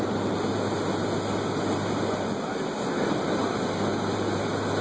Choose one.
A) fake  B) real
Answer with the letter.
B